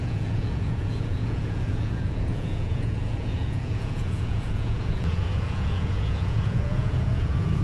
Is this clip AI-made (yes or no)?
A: yes